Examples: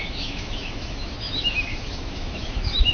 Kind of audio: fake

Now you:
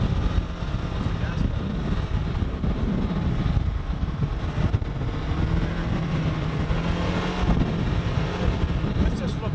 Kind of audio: real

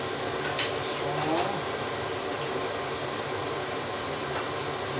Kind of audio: real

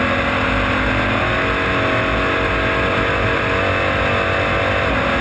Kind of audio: real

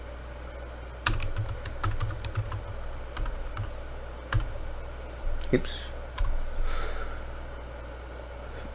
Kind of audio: real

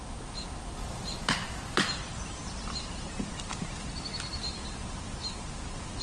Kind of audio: real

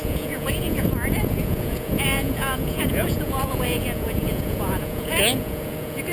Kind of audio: fake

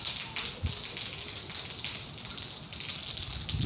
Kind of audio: real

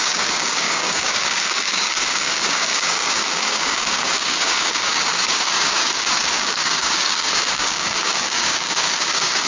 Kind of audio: fake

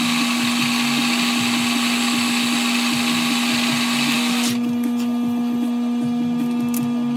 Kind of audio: real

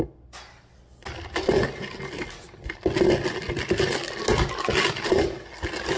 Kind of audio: real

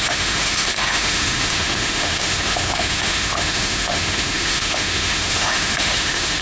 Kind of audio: fake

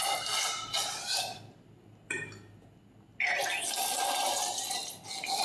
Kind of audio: real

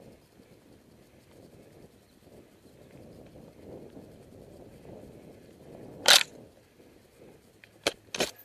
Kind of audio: real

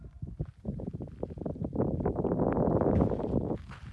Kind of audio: real